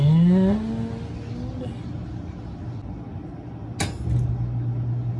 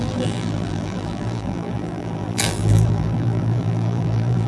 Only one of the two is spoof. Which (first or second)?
second